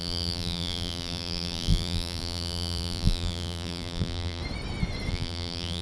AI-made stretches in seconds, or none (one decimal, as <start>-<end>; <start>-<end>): 0.0-4.4; 5.1-5.8